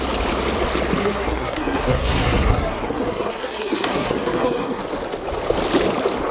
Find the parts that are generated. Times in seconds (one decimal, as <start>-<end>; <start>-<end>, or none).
1.0-4.8